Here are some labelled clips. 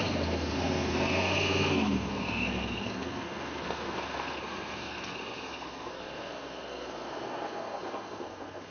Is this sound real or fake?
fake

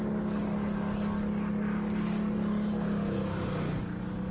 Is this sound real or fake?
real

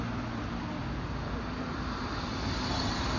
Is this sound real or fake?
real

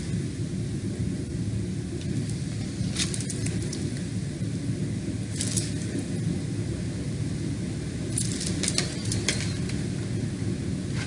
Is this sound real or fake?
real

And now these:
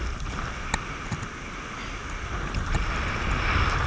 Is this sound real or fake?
real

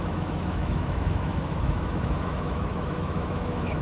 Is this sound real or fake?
fake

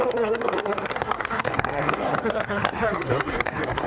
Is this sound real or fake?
fake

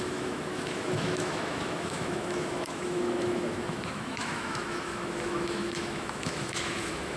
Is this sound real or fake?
fake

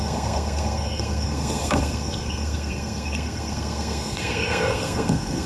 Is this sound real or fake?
fake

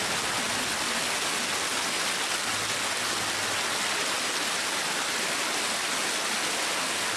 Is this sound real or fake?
real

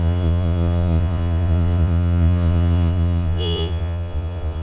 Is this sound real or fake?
fake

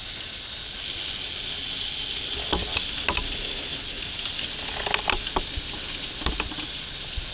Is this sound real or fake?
real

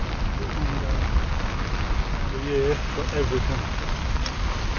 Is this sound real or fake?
real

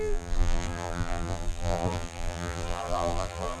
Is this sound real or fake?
fake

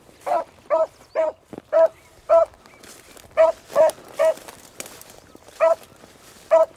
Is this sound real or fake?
real